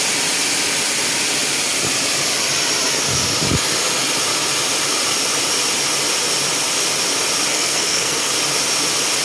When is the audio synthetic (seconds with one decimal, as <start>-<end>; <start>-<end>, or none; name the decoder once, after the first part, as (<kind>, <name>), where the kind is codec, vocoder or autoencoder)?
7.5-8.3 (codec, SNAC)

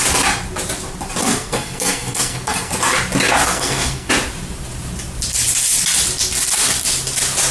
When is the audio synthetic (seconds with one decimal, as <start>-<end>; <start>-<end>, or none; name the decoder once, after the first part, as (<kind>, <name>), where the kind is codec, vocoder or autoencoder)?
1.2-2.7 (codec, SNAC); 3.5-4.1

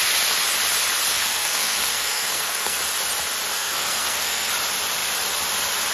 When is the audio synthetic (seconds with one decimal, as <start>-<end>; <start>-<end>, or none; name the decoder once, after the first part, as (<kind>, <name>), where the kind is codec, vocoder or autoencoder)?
1.1-2.8 (codec, SNAC); 3.5-4.5

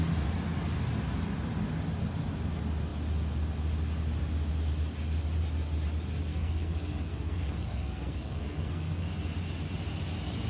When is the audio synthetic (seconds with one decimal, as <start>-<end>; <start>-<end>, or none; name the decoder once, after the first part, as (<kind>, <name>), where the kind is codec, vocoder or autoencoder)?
6.3-9.1 (codec, SNAC)